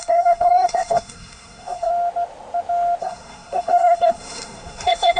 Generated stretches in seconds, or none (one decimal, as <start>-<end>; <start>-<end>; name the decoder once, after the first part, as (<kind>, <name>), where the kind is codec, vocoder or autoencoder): 0.0-1.9 (codec, SNAC); 3.0-5.2